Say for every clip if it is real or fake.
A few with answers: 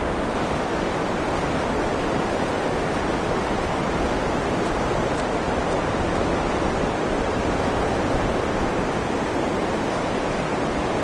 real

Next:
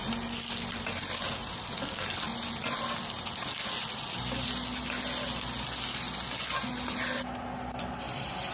real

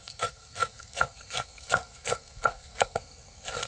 fake